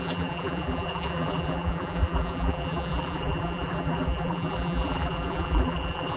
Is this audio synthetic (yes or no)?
yes